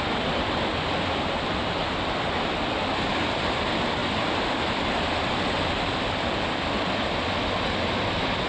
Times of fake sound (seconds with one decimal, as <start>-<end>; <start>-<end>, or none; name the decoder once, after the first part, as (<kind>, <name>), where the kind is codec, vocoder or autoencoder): none